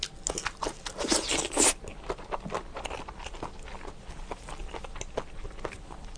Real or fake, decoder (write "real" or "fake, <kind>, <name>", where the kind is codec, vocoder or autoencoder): real